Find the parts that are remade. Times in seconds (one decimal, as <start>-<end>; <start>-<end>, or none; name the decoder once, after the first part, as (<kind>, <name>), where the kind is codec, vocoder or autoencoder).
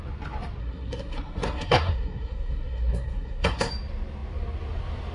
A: 0.6-3.7 (codec, SNAC)